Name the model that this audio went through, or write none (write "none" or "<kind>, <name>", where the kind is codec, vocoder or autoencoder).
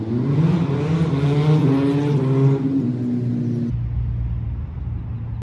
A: none